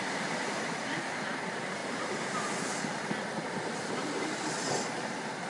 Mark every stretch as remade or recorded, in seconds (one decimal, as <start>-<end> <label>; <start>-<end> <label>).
0.0-1.8 remade; 1.8-2.8 recorded; 2.8-5.5 remade